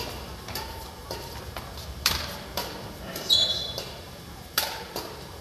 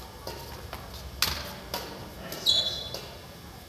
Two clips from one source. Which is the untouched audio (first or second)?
second